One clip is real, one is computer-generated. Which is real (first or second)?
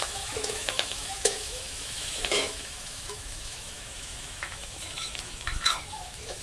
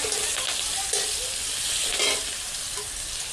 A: second